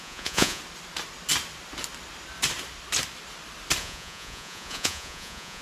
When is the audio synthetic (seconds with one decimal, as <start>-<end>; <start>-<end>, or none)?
0.0-0.6; 3.8-5.6